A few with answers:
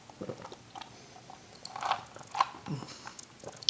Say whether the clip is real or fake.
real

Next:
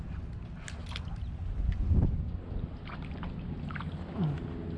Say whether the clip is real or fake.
real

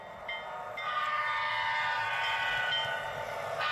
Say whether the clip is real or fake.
real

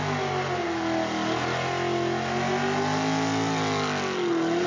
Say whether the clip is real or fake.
real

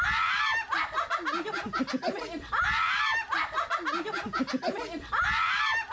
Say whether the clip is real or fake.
real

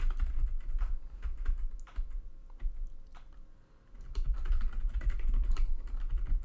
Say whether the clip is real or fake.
real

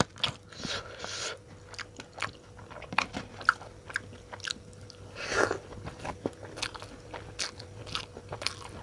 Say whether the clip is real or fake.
real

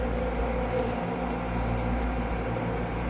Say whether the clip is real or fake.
real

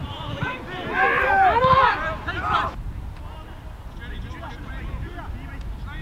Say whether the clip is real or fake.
real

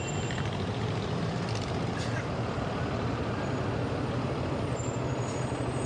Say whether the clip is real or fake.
fake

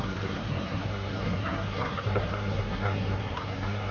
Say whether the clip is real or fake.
fake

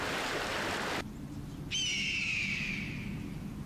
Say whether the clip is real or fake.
real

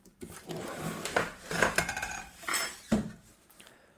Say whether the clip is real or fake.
fake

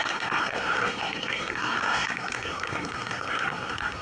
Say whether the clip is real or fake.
fake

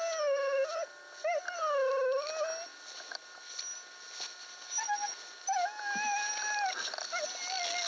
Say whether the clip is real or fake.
real